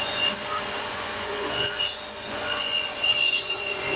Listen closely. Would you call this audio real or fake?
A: fake